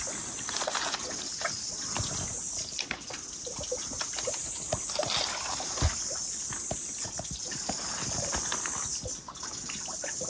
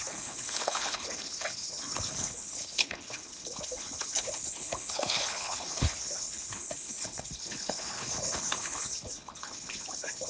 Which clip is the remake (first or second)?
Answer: second